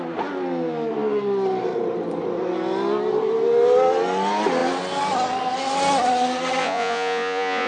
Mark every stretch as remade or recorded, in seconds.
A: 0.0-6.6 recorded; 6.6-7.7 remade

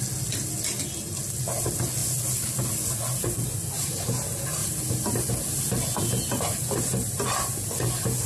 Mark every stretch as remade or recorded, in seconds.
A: 0.0-8.3 recorded

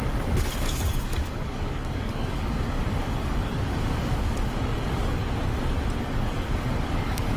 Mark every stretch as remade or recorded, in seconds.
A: 0.0-5.2 remade; 5.2-6.0 recorded; 6.0-7.4 remade

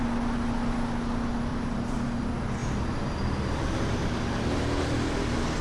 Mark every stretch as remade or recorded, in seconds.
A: 0.0-1.5 recorded; 1.5-2.1 remade; 2.1-5.6 recorded

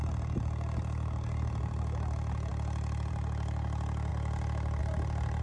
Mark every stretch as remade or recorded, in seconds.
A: 0.0-5.4 recorded

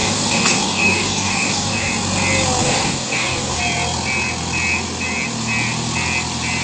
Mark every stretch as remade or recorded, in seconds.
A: 0.0-1.9 remade; 1.9-2.6 recorded; 2.6-3.6 remade; 3.6-6.6 recorded